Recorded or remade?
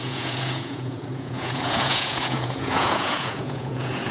remade